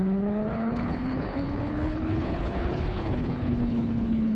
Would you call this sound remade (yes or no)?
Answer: yes